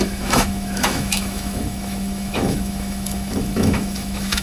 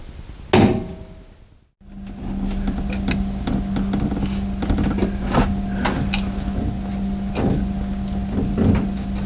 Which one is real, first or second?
second